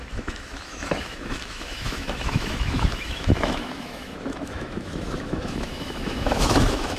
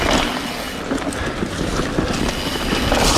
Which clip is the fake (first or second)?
first